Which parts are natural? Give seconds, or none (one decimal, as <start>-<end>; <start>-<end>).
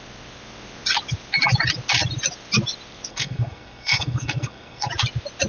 0.0-3.1; 4.9-5.5